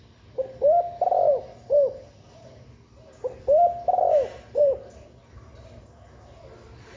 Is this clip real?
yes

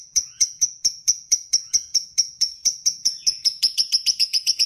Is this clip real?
no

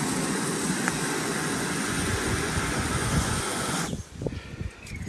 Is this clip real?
no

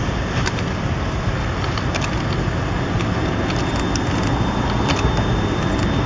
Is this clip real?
yes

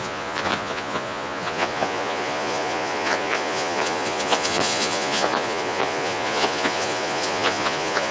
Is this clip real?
no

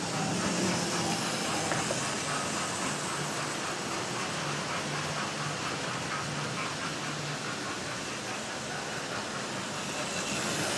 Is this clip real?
yes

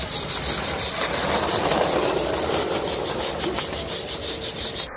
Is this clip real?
yes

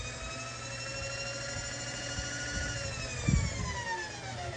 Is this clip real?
yes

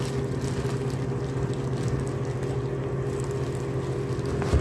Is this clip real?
yes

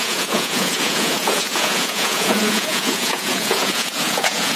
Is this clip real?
no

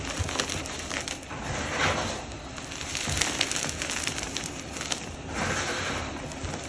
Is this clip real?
yes